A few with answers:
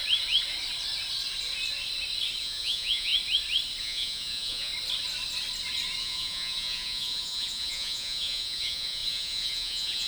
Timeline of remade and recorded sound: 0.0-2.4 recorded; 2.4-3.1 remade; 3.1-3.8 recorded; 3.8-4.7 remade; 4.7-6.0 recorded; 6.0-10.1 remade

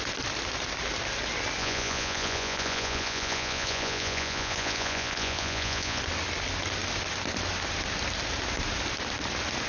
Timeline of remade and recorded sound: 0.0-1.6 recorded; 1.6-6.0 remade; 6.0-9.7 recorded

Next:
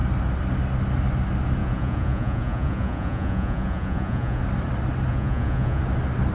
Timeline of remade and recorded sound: 0.0-1.6 recorded; 1.6-4.4 remade; 4.4-5.1 recorded; 5.1-5.8 remade; 5.8-6.3 recorded

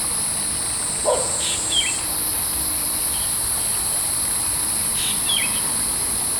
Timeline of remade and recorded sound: 0.0-1.0 recorded; 1.0-1.8 remade; 1.8-6.4 recorded

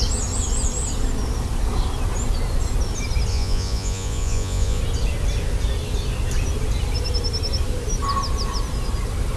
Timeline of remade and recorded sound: 0.0-3.3 recorded; 3.3-4.8 remade; 4.8-9.4 recorded